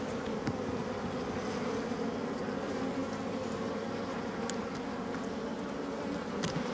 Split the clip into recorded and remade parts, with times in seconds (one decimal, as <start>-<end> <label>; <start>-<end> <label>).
0.0-6.7 recorded